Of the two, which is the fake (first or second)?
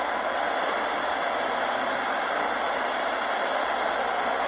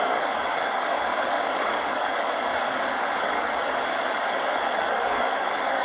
second